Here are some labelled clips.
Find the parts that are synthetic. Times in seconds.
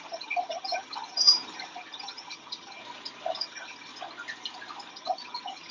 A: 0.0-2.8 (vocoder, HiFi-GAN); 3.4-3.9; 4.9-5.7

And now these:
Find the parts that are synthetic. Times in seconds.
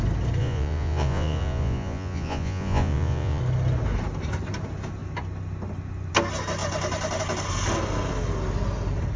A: 0.4-3.4 (vocoder, Vocos)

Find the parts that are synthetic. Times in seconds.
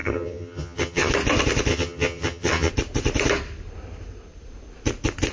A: 0.0-1.1 (vocoder, HiFi-GAN); 1.7-2.7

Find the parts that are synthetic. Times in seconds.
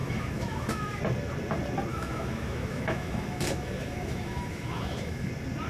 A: 0.0-1.0 (autoencoder, DAC-VAE); 1.9-5.3